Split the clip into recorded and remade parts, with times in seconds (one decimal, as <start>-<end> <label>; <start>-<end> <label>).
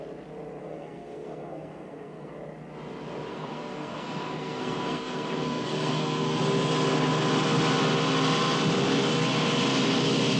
0.0-0.6 recorded; 0.6-2.3 remade; 2.3-3.3 recorded; 3.3-6.4 remade; 6.4-10.4 recorded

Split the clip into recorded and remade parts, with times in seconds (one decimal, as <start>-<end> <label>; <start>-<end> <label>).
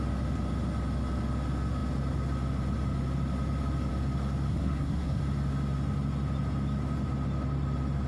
0.0-4.5 recorded; 4.5-5.2 remade; 5.2-8.1 recorded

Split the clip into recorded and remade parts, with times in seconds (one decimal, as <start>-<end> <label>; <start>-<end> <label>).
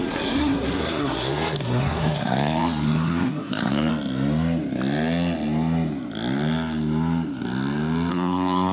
0.0-3.9 remade; 3.9-8.1 recorded; 8.1-8.7 remade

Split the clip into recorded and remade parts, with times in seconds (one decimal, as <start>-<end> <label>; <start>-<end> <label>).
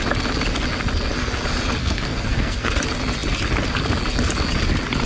0.0-1.8 recorded; 1.8-2.7 remade; 2.7-5.1 recorded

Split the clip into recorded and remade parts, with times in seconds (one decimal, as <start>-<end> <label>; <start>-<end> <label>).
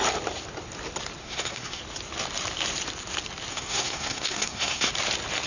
0.0-1.2 recorded; 1.2-1.8 remade; 1.8-3.5 recorded; 3.5-4.9 remade; 4.9-5.5 recorded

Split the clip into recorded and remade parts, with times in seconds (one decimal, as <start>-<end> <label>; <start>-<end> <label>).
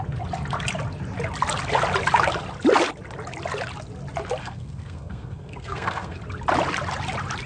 0.0-4.4 recorded; 4.4-6.2 remade; 6.2-7.5 recorded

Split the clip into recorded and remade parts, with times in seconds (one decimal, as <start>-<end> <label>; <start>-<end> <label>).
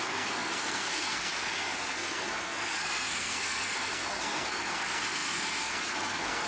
0.0-6.5 remade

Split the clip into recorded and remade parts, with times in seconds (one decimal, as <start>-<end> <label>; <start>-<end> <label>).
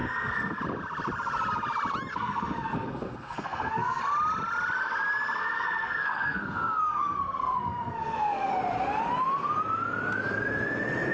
0.0-0.6 remade; 0.6-2.1 recorded; 2.1-4.0 remade; 4.0-5.4 recorded; 5.4-8.5 remade; 8.5-11.1 recorded